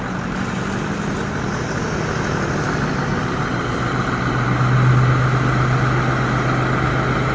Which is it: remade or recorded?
recorded